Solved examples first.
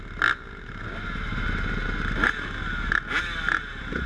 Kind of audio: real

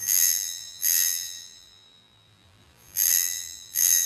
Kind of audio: fake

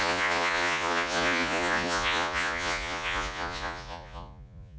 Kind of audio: fake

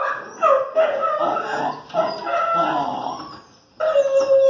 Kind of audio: real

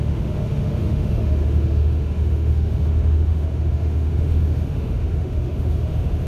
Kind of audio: fake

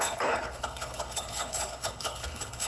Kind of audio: fake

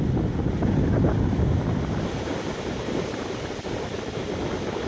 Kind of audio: real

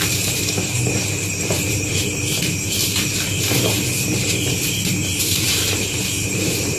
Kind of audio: fake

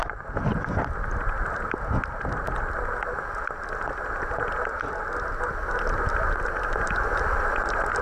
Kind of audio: real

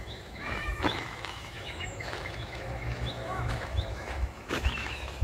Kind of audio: fake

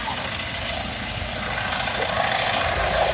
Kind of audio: real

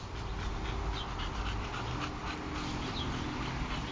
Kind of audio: real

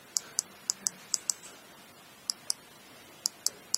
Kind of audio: real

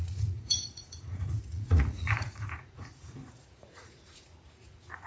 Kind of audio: fake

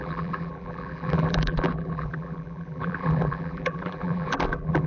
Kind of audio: fake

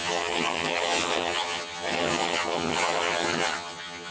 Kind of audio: fake